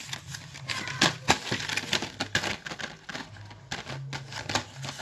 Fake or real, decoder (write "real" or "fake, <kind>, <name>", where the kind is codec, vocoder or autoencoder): real